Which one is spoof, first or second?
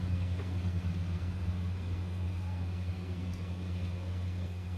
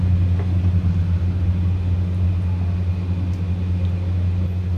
first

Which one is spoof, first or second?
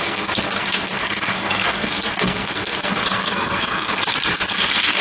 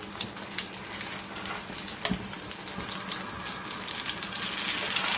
first